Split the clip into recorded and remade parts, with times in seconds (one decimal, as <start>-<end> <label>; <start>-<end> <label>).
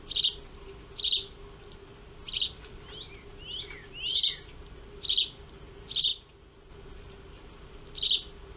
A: 0.0-8.6 recorded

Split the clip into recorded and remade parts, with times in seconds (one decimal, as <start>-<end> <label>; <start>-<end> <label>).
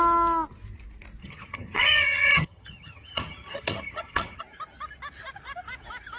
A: 0.0-1.2 recorded; 1.2-4.4 remade; 4.4-6.2 recorded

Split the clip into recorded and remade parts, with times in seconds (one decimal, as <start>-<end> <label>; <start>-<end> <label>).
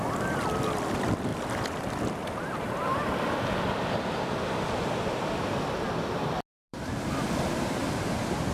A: 0.0-6.7 recorded; 6.7-7.4 remade; 7.4-8.5 recorded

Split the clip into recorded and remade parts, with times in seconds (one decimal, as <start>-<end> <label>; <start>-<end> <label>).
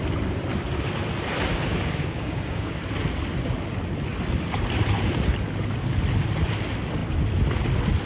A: 0.0-1.5 recorded; 1.5-2.7 remade; 2.7-8.1 recorded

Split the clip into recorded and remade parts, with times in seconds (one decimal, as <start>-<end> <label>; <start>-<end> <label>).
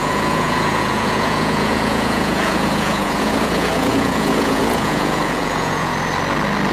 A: 0.0-5.9 remade; 5.9-6.7 recorded